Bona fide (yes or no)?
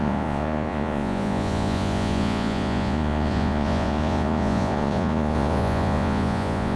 no